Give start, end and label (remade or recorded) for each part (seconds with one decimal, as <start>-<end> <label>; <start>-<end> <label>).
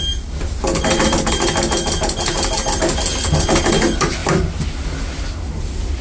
0.0-6.0 recorded